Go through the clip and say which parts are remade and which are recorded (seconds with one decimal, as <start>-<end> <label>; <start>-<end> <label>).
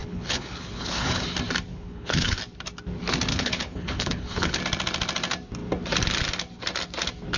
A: 0.0-1.2 remade; 1.2-1.7 recorded; 1.7-2.4 remade; 2.4-3.3 recorded; 3.3-4.6 remade; 4.6-7.4 recorded